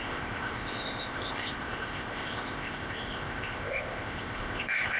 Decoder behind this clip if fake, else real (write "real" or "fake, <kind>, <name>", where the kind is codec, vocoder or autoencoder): fake, codec, ZipCodec